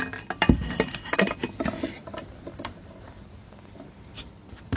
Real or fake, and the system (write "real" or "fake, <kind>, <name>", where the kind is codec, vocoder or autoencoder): fake, vocoder, BigVGAN v2